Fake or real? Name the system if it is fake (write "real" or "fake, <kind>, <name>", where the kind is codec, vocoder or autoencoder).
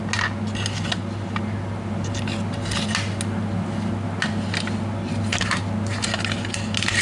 real